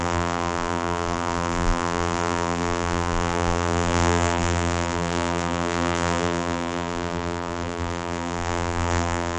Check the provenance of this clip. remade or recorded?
remade